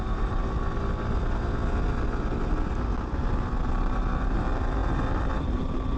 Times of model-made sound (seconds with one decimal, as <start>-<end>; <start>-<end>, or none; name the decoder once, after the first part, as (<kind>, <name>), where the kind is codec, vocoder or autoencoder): 0.0-0.4 (vocoder, BigVGAN v2); 3.7-6.0